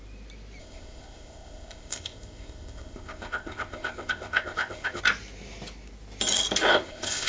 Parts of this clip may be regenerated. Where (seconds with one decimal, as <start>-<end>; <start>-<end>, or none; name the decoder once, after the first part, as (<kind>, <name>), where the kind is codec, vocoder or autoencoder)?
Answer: 0.6-5.0 (codec, ZipCodec); 6.7-7.3